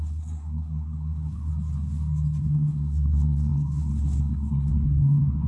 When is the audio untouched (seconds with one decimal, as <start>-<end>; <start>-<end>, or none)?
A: 1.5-2.4